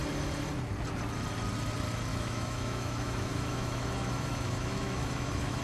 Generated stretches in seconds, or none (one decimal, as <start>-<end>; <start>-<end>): 2.1-5.6